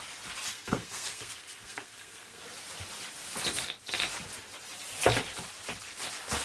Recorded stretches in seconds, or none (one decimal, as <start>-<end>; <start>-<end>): 0.0-0.5; 2.4-6.4